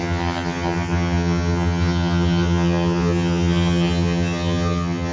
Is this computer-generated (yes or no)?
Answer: yes